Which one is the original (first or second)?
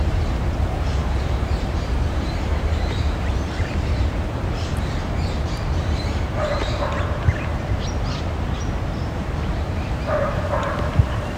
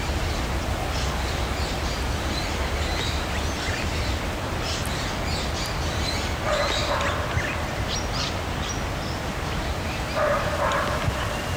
second